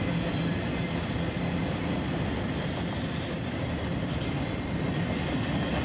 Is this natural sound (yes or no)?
no